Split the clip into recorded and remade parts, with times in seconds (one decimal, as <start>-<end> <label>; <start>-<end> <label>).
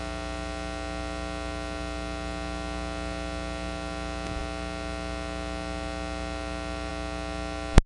0.0-7.9 recorded